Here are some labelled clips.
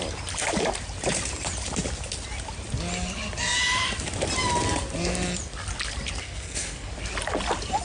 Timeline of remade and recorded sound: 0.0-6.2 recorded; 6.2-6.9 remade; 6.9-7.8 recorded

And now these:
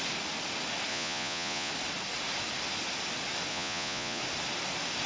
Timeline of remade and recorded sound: 0.0-0.9 recorded; 0.9-1.7 remade; 1.7-3.5 recorded; 3.5-4.2 remade; 4.2-5.1 recorded

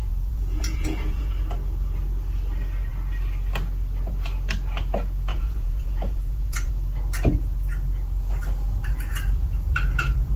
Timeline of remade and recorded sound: 0.0-1.3 remade; 1.3-5.3 recorded; 5.3-6.7 remade; 6.7-10.4 recorded

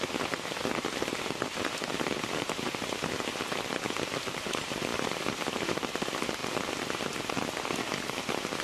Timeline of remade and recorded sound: 0.0-4.9 recorded; 4.9-5.7 remade; 5.7-8.6 recorded

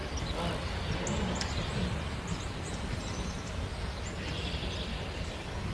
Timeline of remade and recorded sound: 0.0-5.7 recorded

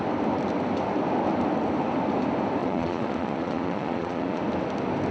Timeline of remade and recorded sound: 0.0-2.6 recorded; 2.6-4.4 remade; 4.4-5.1 recorded